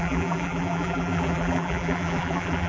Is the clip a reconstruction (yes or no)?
yes